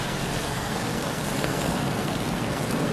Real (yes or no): no